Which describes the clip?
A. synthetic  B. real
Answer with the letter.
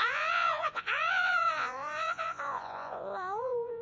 A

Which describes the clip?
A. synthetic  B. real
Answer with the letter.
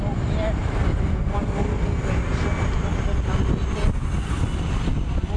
B